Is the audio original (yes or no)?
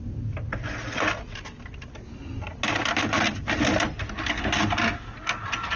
yes